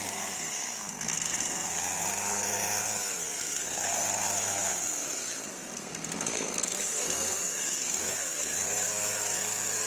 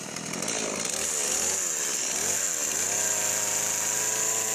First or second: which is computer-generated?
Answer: first